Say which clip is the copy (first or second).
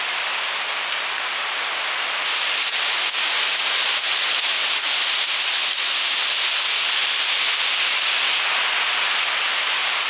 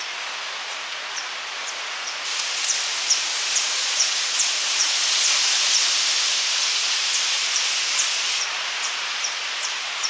second